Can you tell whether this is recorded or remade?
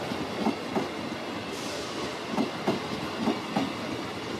recorded